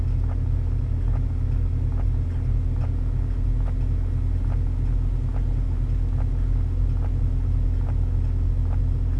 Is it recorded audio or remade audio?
recorded